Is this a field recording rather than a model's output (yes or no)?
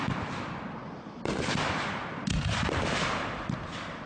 yes